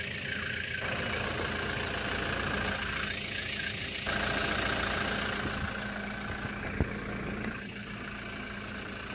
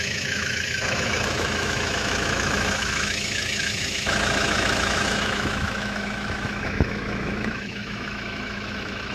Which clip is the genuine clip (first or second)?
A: first